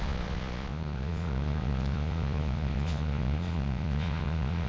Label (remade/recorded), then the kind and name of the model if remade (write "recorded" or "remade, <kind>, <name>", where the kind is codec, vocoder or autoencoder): remade, vocoder, Vocos